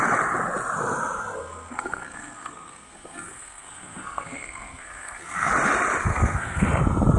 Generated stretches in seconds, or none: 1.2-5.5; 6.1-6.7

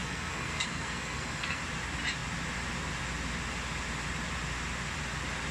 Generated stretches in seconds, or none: 0.0-1.6